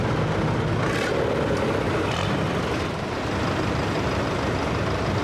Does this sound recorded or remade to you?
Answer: recorded